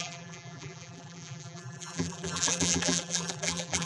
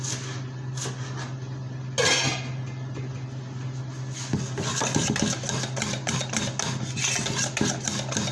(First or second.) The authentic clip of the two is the second